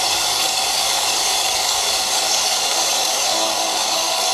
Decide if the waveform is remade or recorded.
remade